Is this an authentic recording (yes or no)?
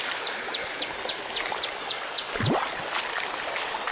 no